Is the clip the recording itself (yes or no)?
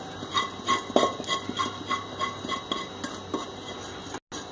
yes